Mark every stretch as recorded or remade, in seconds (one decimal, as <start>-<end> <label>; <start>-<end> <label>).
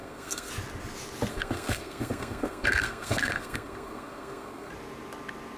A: 0.0-0.5 remade; 0.5-1.3 recorded; 1.3-4.7 remade; 4.7-5.6 recorded